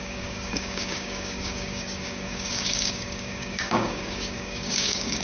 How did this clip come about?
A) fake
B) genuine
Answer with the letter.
A